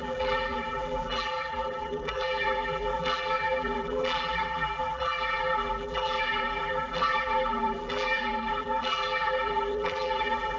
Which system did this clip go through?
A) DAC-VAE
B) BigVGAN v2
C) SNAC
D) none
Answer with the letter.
B